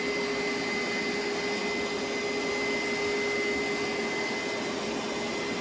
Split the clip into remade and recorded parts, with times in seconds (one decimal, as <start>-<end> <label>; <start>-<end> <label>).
0.0-5.6 recorded